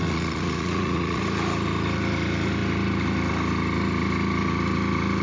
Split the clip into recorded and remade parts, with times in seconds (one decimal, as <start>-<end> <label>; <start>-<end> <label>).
0.0-1.2 remade; 1.2-5.2 recorded